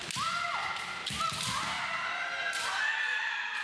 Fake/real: real